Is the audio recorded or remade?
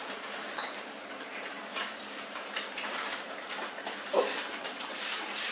remade